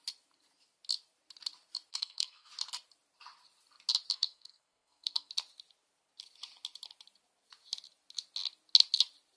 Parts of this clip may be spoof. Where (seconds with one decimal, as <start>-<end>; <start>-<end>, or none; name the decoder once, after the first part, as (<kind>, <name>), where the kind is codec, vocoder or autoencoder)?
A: 1.9-2.5 (codec, SNAC); 4.1-5.3